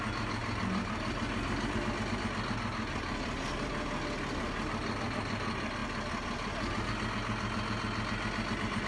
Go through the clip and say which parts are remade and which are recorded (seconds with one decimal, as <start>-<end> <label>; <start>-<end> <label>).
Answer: 0.0-8.9 recorded